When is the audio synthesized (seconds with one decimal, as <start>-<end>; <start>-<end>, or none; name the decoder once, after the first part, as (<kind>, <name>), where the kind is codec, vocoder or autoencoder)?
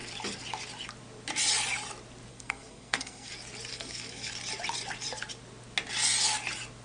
2.3-3.3 (codec, SNAC); 3.7-4.3